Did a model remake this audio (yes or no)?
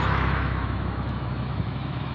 yes